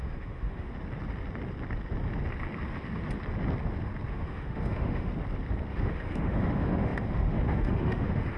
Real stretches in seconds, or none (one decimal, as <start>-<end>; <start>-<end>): 0.7-4.1; 5.1-5.7